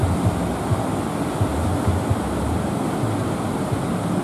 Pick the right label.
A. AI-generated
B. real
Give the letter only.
B